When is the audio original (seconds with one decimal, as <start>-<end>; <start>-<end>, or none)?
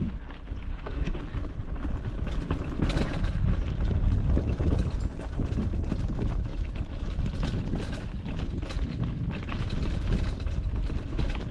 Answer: 0.0-0.7; 1.2-11.5